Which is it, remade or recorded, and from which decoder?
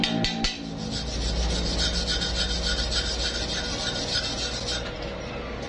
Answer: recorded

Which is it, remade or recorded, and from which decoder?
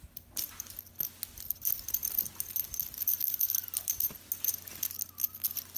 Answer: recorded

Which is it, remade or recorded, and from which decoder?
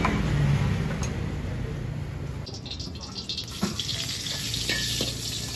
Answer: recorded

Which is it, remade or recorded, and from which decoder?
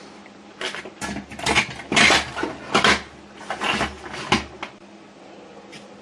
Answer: recorded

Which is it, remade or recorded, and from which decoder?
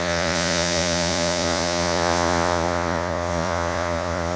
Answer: remade, vocoder, Vocos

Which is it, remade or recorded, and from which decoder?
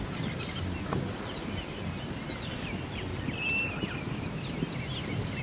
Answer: recorded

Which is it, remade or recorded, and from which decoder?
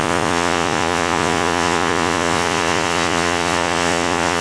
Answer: remade, vocoder, Vocos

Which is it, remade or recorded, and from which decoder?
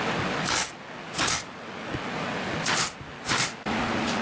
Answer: recorded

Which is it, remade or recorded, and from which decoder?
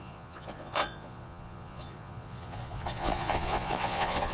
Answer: remade, vocoder, Vocos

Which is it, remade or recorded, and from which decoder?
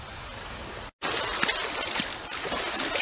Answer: recorded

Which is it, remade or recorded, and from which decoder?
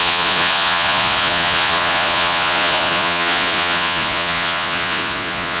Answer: remade, vocoder, Vocos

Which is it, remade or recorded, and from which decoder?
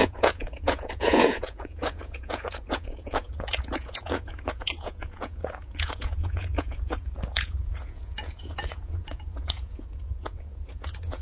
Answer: remade, vocoder, Vocos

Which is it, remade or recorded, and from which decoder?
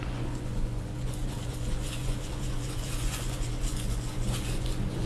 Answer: remade, vocoder, Vocos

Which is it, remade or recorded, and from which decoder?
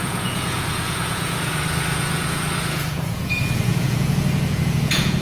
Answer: remade, vocoder, Vocos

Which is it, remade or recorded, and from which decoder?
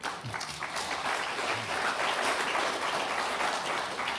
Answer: recorded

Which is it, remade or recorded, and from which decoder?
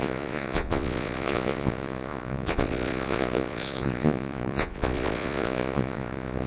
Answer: remade, vocoder, Vocos